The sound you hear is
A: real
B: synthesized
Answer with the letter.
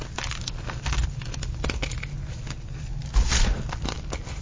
A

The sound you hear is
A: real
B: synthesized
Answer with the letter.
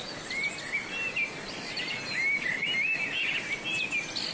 A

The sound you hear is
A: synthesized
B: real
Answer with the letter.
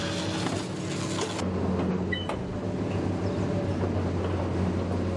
B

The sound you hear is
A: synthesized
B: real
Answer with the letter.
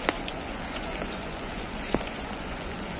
A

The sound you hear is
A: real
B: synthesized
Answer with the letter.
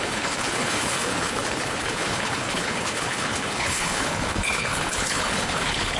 B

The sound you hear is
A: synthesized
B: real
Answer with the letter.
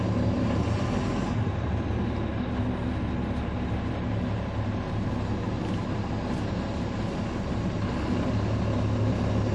B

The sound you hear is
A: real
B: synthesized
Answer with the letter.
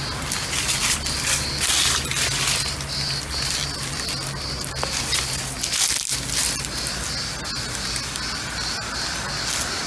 A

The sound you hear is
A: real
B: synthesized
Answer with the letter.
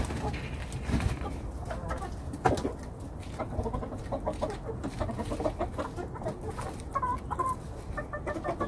A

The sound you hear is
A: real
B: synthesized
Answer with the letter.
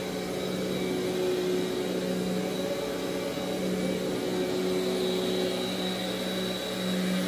A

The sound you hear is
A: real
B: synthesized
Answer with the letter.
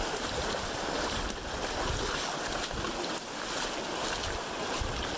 A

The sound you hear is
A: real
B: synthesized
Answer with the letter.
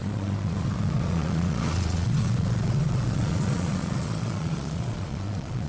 B